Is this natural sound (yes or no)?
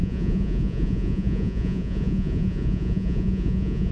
no